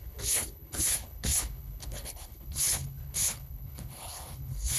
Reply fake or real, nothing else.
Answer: fake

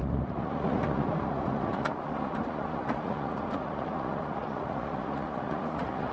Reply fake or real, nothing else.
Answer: fake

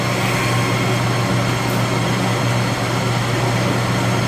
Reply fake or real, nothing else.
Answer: real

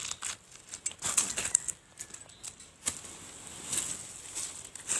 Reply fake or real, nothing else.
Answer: real